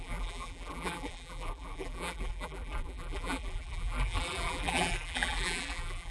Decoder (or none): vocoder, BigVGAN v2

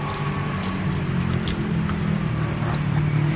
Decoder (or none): none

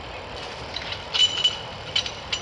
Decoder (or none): vocoder, BigVGAN v2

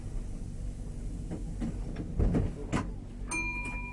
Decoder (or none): none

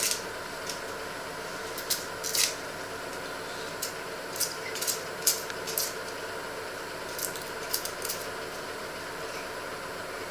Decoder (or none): none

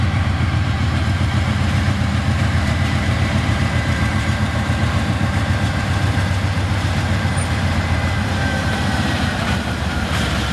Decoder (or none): vocoder, BigVGAN v2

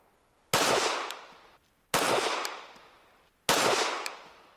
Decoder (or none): none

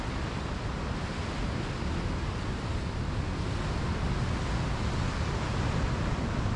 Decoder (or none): none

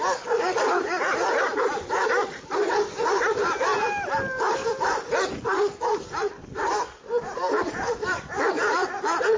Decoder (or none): vocoder, BigVGAN v2